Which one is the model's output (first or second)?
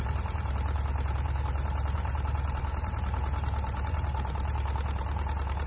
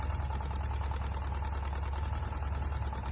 first